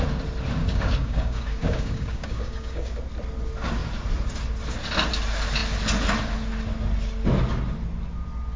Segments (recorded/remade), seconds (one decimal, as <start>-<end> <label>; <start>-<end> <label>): 0.0-0.6 recorded; 0.6-2.9 remade; 2.9-8.6 recorded